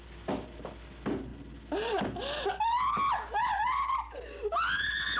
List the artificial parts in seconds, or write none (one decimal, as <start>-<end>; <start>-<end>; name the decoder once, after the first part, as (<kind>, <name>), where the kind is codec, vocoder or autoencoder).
none